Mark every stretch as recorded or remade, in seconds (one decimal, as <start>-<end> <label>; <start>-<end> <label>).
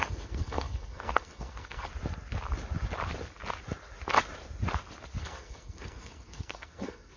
0.0-1.9 remade; 1.9-5.2 recorded; 5.2-7.2 remade